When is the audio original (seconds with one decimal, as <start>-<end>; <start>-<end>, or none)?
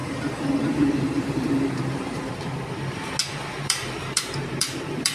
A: 2.3-3.2